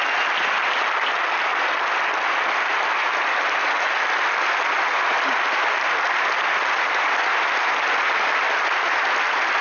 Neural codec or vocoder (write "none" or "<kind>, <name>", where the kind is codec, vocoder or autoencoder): none